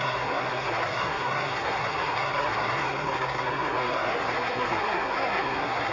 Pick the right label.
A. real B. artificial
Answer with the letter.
B